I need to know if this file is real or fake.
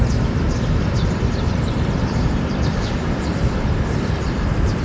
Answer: fake